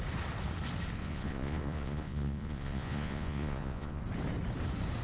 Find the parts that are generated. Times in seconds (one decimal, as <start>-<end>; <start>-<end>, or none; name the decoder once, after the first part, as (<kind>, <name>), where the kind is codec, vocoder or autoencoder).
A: 1.0-4.0 (vocoder, Vocos)

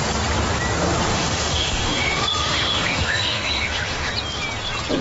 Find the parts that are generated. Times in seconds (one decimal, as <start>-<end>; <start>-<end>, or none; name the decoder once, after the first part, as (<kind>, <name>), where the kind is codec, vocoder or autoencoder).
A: 1.1-4.1 (autoencoder, DAC-VAE)

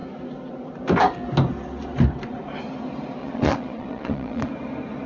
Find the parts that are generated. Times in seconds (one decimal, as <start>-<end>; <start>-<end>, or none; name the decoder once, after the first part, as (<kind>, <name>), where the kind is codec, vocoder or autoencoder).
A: 3.2-4.5 (vocoder, Vocos)

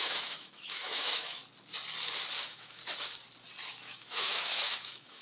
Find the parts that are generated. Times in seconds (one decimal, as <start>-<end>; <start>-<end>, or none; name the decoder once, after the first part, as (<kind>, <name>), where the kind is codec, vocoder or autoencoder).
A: 0.0-1.4 (autoencoder, DAC-VAE); 2.4-2.8; 3.6-5.2

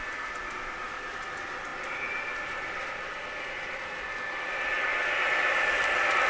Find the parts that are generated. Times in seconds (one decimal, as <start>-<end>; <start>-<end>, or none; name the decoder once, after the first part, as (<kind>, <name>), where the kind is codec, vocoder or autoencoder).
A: none

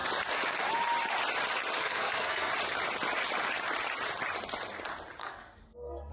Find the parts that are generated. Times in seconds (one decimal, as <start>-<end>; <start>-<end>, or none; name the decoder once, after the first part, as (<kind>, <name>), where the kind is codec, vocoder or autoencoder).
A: 1.8-2.5 (codec, SNAC); 5.2-6.1